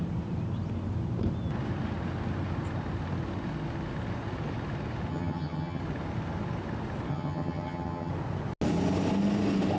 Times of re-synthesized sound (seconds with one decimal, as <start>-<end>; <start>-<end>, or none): 5.1-5.8; 7.1-8.1